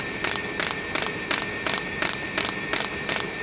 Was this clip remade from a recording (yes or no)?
no